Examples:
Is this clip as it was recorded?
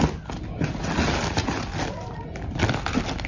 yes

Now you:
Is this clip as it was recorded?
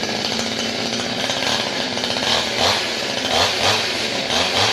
yes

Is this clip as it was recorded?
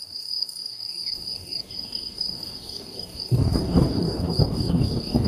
no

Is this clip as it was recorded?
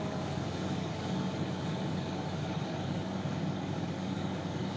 no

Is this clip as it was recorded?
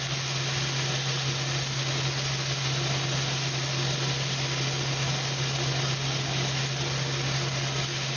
yes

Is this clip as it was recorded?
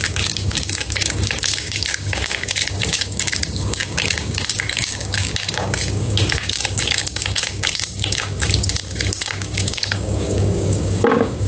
no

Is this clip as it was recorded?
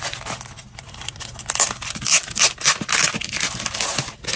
yes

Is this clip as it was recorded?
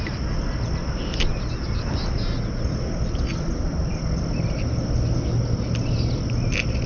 yes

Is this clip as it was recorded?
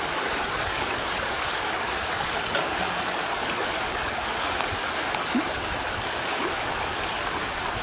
no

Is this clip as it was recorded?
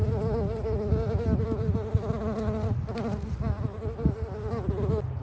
yes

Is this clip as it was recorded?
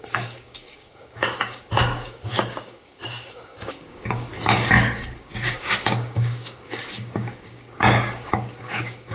no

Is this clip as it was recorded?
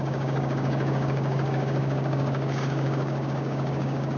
no